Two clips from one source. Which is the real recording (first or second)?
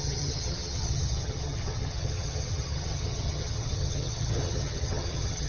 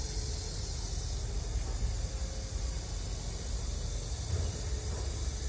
second